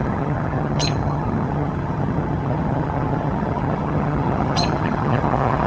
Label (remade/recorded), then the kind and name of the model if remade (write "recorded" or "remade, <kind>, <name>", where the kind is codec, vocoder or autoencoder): remade, vocoder, HiFi-GAN